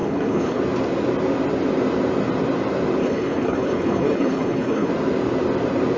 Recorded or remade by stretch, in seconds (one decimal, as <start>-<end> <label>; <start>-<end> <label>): 0.0-0.6 remade; 0.6-3.0 recorded; 3.0-4.9 remade; 4.9-6.0 recorded